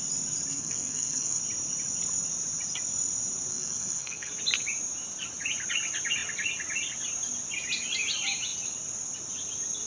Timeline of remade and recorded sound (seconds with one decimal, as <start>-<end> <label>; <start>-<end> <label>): 0.0-0.5 recorded; 0.5-1.4 remade; 1.4-3.5 recorded; 3.5-4.3 remade; 4.3-9.9 recorded